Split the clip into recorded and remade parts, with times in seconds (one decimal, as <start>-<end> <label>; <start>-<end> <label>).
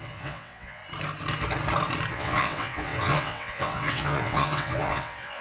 0.0-0.8 remade; 0.8-2.1 recorded; 2.1-5.4 remade